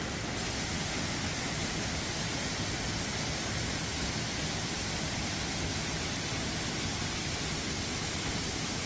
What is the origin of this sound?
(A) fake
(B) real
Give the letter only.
B